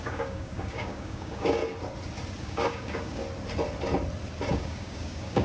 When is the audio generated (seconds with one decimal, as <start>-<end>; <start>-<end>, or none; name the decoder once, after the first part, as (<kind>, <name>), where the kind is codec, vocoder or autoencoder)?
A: 0.0-1.6 (codec, DAC); 2.4-3.2; 4.5-5.4